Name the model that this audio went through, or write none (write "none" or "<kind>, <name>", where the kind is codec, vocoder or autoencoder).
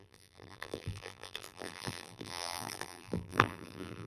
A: vocoder, BigVGAN v2